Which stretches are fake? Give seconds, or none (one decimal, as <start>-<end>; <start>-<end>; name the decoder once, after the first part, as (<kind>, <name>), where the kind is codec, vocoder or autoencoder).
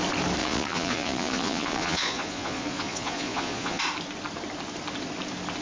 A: 0.4-3.8 (vocoder, Vocos)